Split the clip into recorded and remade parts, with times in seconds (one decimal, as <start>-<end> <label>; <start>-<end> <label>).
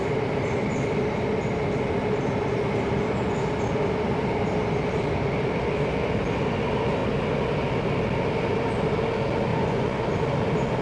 0.0-9.5 recorded; 9.5-10.0 remade; 10.0-10.8 recorded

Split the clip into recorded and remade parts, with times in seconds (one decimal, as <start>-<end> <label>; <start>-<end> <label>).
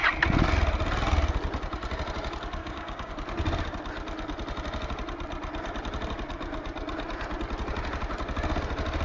0.0-2.6 recorded; 2.6-3.1 remade; 3.1-9.0 recorded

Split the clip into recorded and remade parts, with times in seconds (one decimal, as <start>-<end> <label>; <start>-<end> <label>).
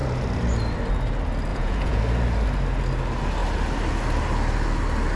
0.0-1.5 recorded; 1.5-2.0 remade; 2.0-5.2 recorded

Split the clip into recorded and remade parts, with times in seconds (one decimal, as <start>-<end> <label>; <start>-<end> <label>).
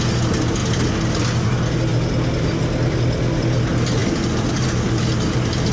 0.0-5.7 recorded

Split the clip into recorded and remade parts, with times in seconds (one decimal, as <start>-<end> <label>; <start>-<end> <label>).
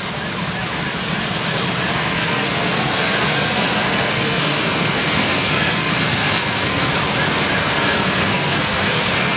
0.0-1.9 recorded; 1.9-6.9 remade; 6.9-7.6 recorded; 7.6-9.4 remade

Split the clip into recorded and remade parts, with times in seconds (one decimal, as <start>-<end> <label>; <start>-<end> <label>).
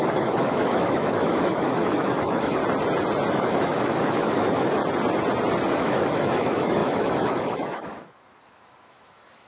0.0-2.6 remade; 2.6-3.3 recorded; 3.3-4.8 remade; 4.8-5.7 recorded; 5.7-9.5 remade